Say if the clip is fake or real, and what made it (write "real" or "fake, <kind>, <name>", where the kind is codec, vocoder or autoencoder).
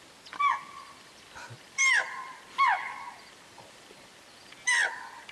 real